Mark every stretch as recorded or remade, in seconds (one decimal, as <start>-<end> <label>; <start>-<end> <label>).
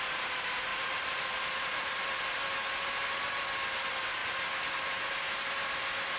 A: 0.0-0.7 recorded; 0.7-2.2 remade; 2.2-6.2 recorded